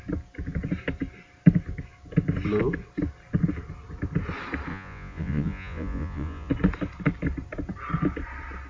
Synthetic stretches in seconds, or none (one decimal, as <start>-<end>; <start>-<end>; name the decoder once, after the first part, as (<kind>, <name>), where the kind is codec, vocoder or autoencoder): 4.7-6.5 (vocoder, Vocos)